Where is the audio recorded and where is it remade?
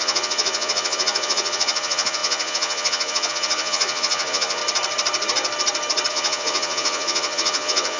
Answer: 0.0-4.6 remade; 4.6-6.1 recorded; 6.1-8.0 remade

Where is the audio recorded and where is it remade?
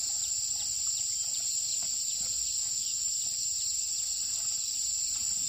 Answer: 0.0-2.6 recorded; 2.6-3.1 remade; 3.1-5.5 recorded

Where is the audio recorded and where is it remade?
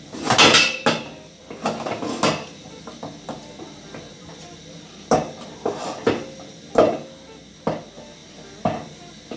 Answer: 0.0-9.4 recorded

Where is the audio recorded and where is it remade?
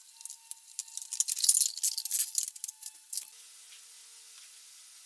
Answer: 0.0-5.1 recorded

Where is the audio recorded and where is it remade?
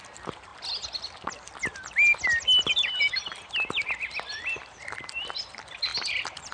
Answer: 0.0-5.9 recorded; 5.9-6.5 remade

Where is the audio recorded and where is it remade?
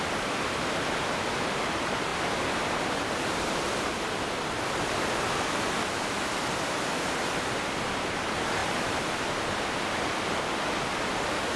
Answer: 0.0-8.6 recorded; 8.6-9.4 remade; 9.4-11.6 recorded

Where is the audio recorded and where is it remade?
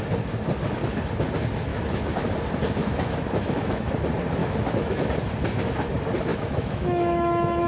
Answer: 0.0-1.7 recorded; 1.7-2.3 remade; 2.3-2.8 recorded; 2.8-3.9 remade; 3.9-4.4 recorded; 4.4-5.1 remade; 5.1-6.3 recorded; 6.3-7.7 remade